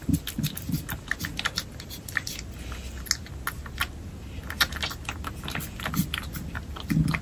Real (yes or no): yes